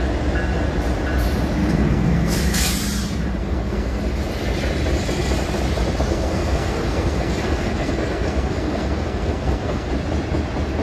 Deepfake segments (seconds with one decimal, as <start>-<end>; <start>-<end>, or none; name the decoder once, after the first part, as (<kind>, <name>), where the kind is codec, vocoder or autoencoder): 1.6-2.7 (codec, SNAC); 3.4-4.0; 6.1-9.9